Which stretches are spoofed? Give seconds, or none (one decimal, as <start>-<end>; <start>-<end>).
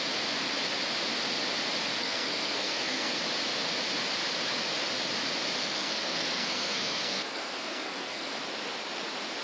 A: 2.0-3.2; 5.6-8.4